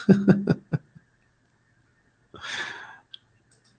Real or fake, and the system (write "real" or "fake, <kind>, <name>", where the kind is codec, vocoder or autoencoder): real